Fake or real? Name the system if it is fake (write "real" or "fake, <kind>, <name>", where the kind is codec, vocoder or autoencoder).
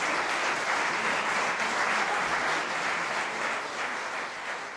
real